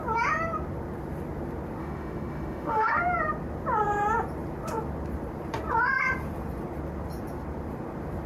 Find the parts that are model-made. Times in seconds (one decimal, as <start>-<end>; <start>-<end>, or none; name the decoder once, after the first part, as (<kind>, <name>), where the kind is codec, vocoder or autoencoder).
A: 1.8-3.0 (autoencoder, DAC-VAE)